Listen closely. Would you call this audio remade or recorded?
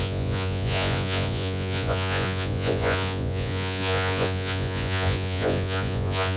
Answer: remade